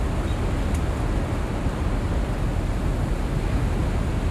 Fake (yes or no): no